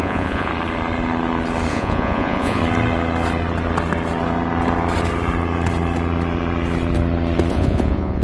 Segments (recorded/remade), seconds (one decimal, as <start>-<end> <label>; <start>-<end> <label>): 0.0-0.5 remade; 0.5-1.7 recorded; 1.7-2.6 remade; 2.6-7.5 recorded; 7.5-8.2 remade